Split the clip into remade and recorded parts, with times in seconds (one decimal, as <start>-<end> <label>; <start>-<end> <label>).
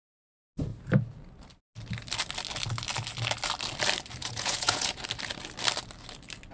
0.0-4.2 recorded; 4.2-5.0 remade; 5.0-6.5 recorded